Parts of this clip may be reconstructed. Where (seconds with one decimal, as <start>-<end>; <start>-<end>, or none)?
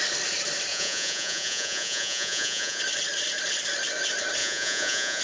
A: 0.7-2.8; 4.4-5.2